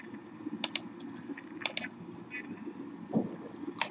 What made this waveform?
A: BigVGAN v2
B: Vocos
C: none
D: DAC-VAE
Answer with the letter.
C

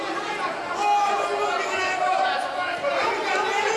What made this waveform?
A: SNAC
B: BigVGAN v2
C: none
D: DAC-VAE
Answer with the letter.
C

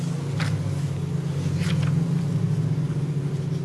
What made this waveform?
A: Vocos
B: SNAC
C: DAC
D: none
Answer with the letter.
D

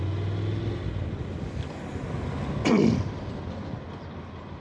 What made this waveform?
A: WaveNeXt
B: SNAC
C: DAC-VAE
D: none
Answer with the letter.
D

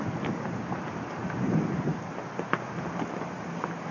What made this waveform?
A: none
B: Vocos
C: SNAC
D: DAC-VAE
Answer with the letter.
A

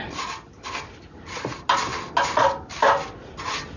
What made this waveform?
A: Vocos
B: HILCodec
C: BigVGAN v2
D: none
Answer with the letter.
D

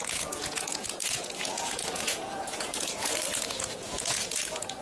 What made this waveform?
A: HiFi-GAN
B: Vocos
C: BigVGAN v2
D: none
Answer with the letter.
B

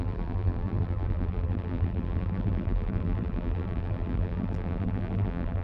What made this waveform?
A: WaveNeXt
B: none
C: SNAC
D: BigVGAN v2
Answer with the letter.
D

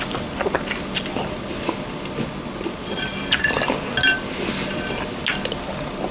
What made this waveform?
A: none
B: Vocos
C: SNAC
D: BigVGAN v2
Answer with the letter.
A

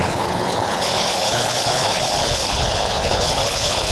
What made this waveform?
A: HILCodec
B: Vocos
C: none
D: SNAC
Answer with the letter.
A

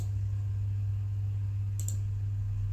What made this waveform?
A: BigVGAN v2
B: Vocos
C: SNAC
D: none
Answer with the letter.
D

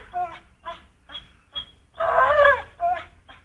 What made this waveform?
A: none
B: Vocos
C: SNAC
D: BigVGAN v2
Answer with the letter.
A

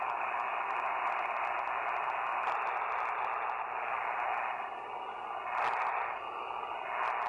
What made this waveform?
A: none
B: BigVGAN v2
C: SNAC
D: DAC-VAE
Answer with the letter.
A